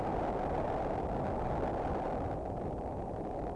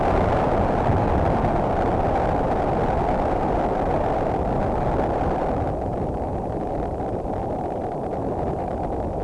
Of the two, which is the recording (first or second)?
first